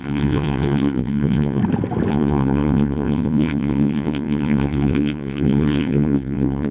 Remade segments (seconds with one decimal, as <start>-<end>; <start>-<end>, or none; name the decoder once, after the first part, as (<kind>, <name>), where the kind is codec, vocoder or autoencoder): 0.0-1.6 (vocoder, WaveNeXt); 2.1-6.7